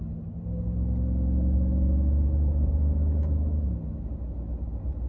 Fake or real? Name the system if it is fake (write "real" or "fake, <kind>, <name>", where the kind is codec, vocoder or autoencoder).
real